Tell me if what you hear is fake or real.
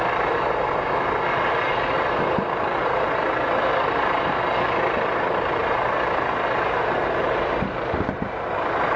real